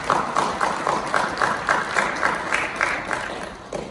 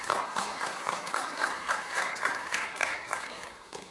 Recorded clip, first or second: first